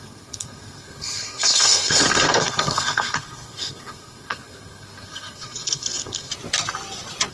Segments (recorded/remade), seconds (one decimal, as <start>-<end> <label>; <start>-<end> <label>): 0.0-6.3 remade; 6.3-7.3 recorded